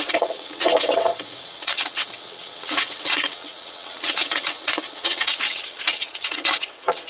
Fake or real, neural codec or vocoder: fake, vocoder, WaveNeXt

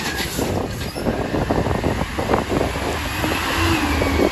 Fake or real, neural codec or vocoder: real